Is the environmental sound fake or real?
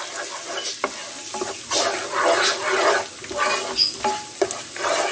real